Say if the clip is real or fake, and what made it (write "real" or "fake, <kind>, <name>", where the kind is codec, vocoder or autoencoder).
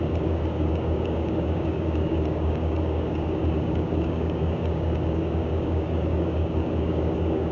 fake, codec, DAC